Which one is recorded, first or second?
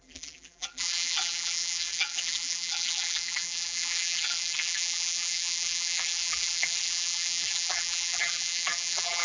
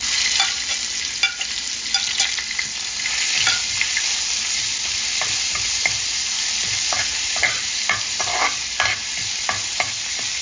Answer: second